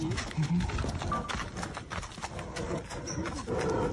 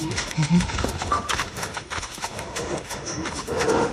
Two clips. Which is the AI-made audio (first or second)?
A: second